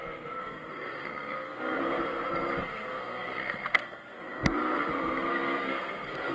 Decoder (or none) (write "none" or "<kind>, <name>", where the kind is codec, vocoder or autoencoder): codec, SNAC